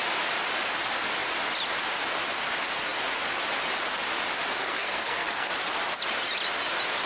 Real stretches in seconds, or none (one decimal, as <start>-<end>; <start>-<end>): 0.0-4.6; 5.5-7.1